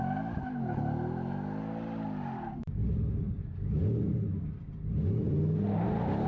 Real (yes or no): yes